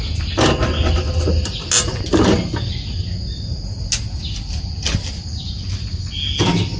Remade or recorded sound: recorded